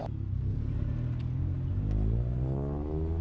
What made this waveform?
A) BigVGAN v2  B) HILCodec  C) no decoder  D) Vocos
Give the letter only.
C